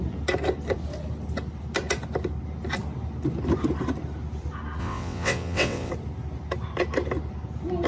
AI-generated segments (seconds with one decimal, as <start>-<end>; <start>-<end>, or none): 4.8-5.9